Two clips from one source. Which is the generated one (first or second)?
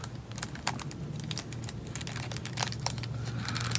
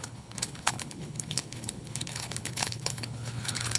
second